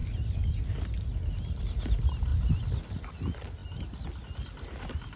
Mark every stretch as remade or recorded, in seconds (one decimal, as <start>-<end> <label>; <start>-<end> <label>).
0.0-0.6 remade; 0.6-2.3 recorded; 2.3-3.0 remade; 3.0-3.6 recorded; 3.6-4.2 remade; 4.2-5.2 recorded